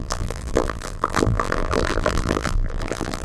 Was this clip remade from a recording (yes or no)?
yes